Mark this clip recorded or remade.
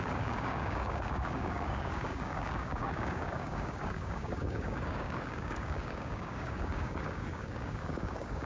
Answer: remade